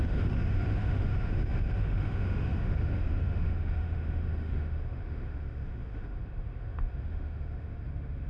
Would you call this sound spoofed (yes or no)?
yes